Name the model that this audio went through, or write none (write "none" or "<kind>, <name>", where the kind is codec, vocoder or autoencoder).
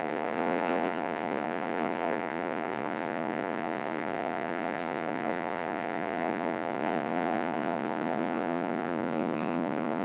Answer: vocoder, Vocos